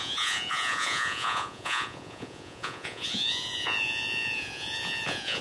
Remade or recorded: remade